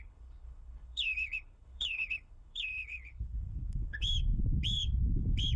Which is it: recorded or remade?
remade